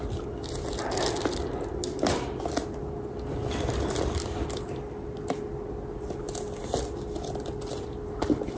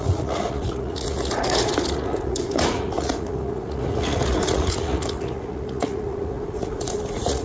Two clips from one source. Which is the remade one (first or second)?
second